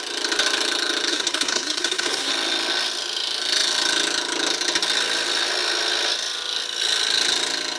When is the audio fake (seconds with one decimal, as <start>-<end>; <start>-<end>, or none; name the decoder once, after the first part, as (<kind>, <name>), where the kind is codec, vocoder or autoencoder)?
1.1-2.3 (codec, SNAC)